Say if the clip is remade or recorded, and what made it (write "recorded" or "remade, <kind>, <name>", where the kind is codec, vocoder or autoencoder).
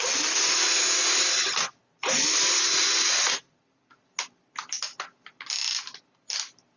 recorded